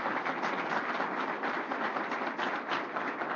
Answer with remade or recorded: recorded